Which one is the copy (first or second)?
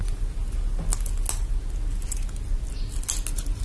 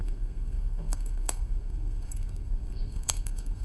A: second